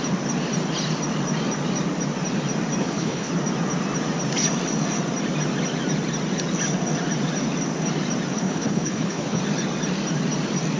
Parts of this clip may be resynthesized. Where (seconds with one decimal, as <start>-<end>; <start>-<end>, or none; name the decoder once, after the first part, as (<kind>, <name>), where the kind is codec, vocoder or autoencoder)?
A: 2.8-3.3 (codec, HILCodec); 8.3-9.4